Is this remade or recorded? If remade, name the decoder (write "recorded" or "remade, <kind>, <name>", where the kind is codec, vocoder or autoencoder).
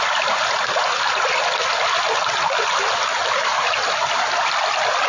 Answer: recorded